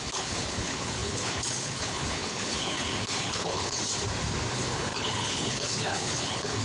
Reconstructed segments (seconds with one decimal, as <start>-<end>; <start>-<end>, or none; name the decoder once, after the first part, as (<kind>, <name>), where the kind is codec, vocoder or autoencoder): 0.0-3.8 (codec, HILCodec); 4.5-6.6